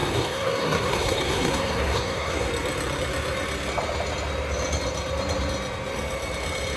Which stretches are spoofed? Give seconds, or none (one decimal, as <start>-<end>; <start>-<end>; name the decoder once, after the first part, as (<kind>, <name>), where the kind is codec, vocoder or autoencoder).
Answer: 0.0-2.5 (codec, SNAC)